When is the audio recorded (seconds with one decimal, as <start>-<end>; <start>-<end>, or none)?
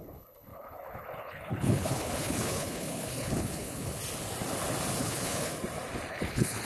4.0-5.0; 5.5-6.1